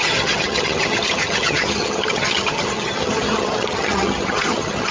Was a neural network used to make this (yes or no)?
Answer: yes